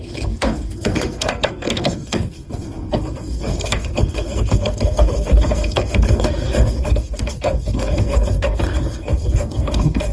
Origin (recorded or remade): remade